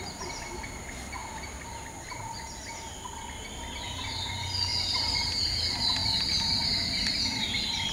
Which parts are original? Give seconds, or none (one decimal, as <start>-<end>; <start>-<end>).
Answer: 0.0-1.2; 1.8-4.7; 5.4-7.9